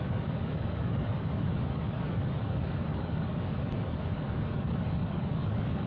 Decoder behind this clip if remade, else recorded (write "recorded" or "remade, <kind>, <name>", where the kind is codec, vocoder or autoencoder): remade, codec, DAC